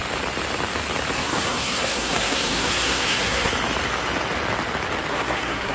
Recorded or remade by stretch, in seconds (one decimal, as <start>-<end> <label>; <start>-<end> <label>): 0.0-1.1 recorded; 1.1-3.5 remade; 3.5-5.1 recorded; 5.1-5.7 remade